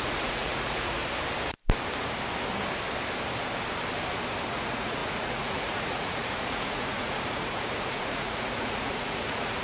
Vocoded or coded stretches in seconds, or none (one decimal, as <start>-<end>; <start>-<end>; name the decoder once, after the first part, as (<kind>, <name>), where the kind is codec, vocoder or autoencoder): 0.0-1.0 (vocoder, Vocos); 4.5-9.6